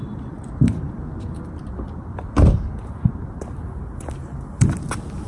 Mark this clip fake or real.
real